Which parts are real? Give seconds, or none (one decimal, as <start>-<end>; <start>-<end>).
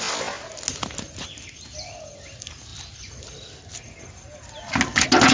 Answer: 0.0-5.3